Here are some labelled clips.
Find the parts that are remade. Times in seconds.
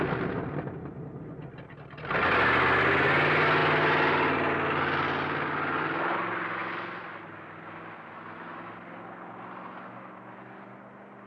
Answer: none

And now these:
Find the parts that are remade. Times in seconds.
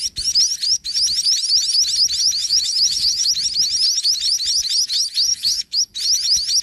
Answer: 2.4-3.3 (autoencoder, DAC-VAE); 5.3-5.9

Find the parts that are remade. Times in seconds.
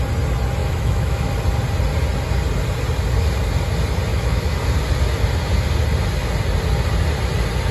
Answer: 0.6-1.3 (autoencoder, DAC-VAE); 4.1-4.6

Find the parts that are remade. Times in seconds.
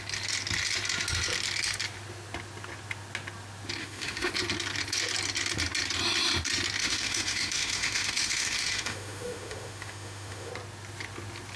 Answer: 3.8-4.3 (autoencoder, DAC-VAE); 6.8-10.5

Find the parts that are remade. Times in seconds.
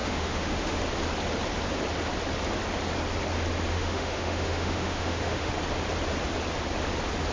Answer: 0.0-0.8 (autoencoder, DAC-VAE); 3.7-5.5